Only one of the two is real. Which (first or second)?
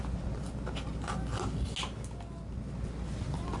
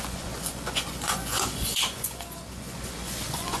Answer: first